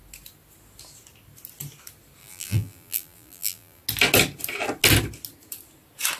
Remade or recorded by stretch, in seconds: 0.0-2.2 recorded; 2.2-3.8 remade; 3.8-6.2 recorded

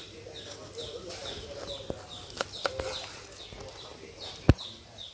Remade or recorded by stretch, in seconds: 0.0-5.1 recorded

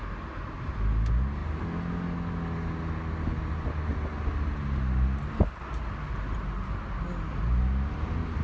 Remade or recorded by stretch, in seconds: 0.0-8.4 recorded

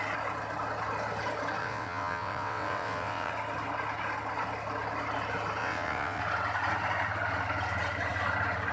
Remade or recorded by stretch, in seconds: 0.0-1.6 recorded; 1.6-3.3 remade; 3.3-5.6 recorded; 5.6-6.2 remade; 6.2-8.7 recorded

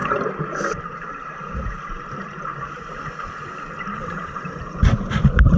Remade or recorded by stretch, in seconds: 0.0-2.5 remade; 2.5-4.1 recorded; 4.1-5.6 remade

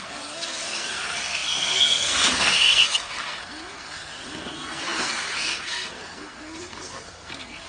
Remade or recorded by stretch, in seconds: 0.0-7.7 remade